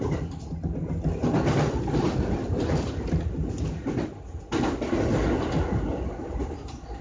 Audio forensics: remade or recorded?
recorded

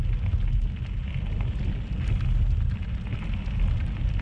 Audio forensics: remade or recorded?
recorded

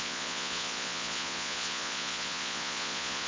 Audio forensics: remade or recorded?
remade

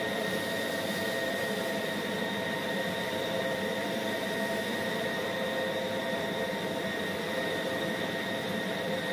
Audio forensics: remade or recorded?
remade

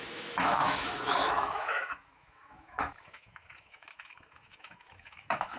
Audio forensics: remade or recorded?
remade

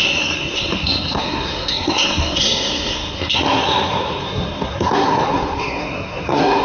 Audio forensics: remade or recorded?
remade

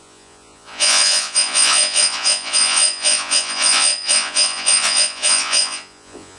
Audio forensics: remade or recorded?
remade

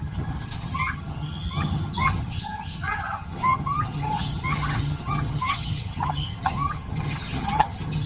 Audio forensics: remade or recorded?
remade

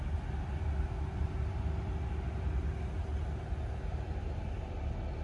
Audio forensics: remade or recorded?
recorded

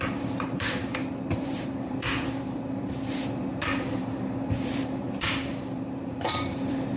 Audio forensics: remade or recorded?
remade